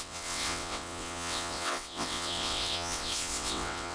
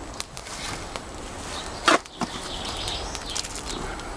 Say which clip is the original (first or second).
second